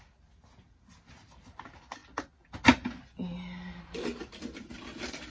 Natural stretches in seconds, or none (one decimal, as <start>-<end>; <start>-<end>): 0.0-5.3